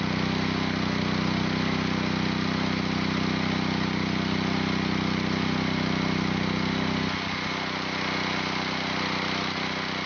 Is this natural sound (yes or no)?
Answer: yes